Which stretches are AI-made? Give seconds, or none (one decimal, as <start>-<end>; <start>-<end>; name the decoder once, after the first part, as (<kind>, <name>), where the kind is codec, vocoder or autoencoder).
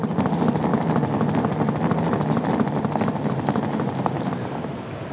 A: 0.0-0.7 (vocoder, BigVGAN v2); 3.3-5.1